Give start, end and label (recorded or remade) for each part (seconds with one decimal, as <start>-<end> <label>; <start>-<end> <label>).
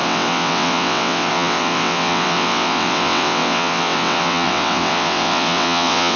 0.0-6.2 remade